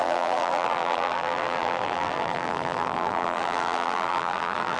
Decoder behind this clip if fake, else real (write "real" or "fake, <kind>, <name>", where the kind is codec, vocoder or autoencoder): fake, vocoder, BigVGAN v2